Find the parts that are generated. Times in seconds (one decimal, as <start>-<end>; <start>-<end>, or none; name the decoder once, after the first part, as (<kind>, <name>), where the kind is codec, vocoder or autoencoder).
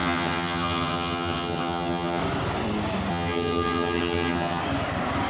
0.0-2.2 (vocoder, HiFi-GAN); 3.1-4.6